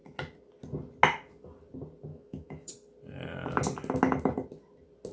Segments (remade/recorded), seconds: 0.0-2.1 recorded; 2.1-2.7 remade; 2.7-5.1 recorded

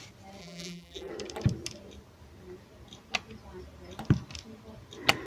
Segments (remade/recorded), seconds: 0.0-0.4 recorded; 0.4-1.1 remade; 1.1-5.3 recorded

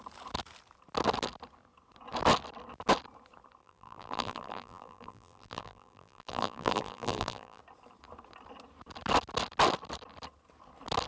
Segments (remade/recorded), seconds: 0.0-3.6 recorded; 3.6-7.6 remade; 7.6-11.1 recorded

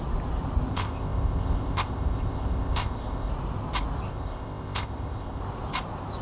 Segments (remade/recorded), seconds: 0.0-0.7 recorded; 0.7-3.3 remade; 3.3-4.1 recorded; 4.1-5.4 remade; 5.4-6.2 recorded

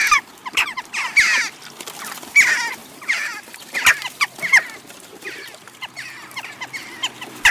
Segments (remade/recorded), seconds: 0.0-0.4 recorded; 0.4-0.9 remade; 0.9-2.8 recorded; 2.8-3.6 remade; 3.6-5.1 recorded; 5.1-6.5 remade; 6.5-7.5 recorded

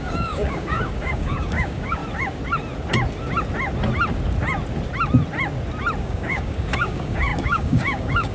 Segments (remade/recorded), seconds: 0.0-2.0 remade; 2.0-6.0 recorded; 6.0-8.3 remade